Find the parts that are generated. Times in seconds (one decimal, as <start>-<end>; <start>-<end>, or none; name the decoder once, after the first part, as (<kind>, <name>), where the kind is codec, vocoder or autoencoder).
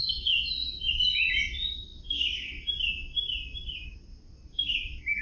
none